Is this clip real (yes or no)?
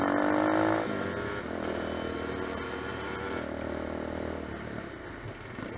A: yes